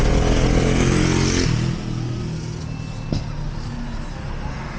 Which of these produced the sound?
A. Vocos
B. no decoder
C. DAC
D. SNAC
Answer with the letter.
B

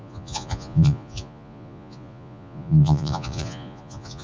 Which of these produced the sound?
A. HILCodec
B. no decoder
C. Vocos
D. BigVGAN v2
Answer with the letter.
C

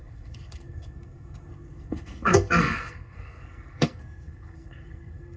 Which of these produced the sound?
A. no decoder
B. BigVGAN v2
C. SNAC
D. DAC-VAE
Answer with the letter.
C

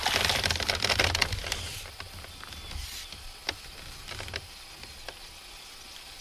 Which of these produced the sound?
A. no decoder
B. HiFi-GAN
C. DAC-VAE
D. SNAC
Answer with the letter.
A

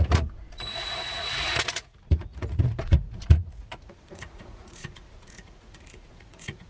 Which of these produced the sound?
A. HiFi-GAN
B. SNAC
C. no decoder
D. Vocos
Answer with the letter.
D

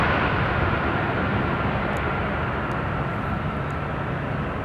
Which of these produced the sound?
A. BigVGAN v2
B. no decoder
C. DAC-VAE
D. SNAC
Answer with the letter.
B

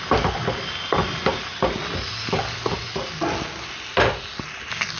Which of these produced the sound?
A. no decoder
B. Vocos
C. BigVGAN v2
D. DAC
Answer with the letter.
A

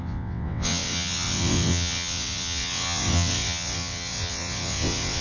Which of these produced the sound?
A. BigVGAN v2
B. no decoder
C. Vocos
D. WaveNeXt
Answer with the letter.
D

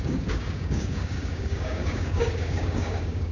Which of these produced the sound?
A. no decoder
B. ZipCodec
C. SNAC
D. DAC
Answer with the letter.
D